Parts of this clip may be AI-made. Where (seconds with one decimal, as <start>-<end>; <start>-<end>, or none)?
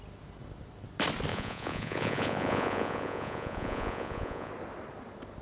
1.3-4.5